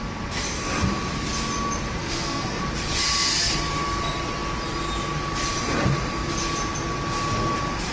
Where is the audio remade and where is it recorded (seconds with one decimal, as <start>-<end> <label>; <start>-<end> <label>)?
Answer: 0.0-2.0 recorded; 2.0-2.6 remade; 2.6-7.9 recorded